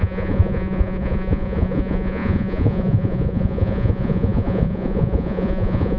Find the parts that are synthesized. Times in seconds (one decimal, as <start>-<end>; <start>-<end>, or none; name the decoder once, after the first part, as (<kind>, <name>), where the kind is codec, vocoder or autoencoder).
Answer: 0.0-6.0 (vocoder, Vocos)